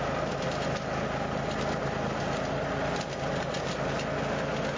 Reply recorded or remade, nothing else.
recorded